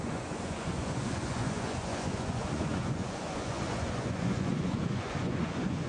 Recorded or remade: remade